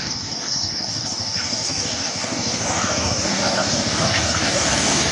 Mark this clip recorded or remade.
remade